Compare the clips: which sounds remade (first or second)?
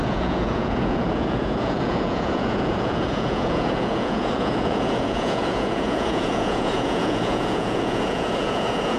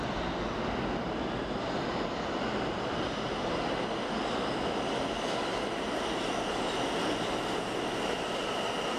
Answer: first